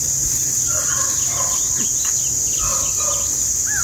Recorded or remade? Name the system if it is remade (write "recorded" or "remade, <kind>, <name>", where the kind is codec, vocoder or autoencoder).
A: recorded